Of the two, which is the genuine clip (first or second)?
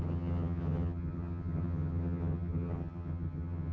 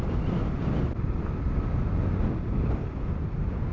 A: second